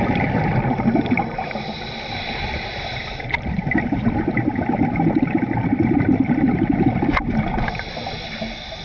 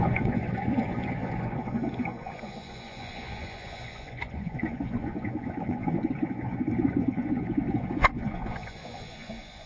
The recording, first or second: first